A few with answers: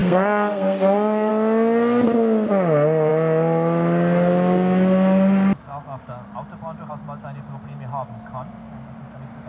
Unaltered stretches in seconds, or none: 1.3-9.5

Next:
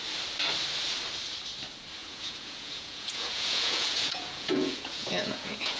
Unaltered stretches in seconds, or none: 0.0-2.0

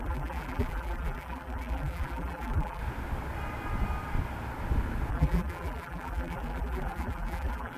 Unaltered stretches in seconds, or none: 2.8-5.1

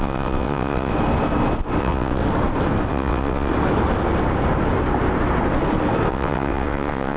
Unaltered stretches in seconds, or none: 0.9-1.8; 2.2-2.9; 3.5-6.1

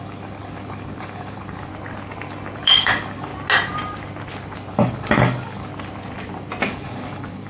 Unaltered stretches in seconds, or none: 1.7-2.6; 3.3-4.7; 5.7-6.7

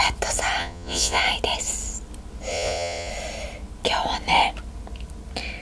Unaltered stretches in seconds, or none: 0.0-0.6; 1.2-2.5; 3.1-5.6